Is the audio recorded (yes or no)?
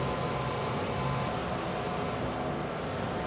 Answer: yes